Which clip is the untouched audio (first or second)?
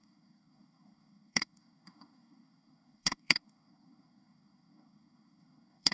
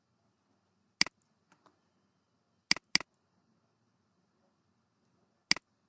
second